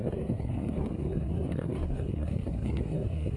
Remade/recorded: remade